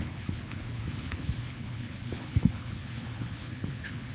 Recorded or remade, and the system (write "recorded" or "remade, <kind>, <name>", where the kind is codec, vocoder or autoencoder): remade, codec, HILCodec